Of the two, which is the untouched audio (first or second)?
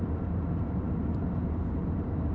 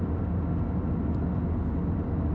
second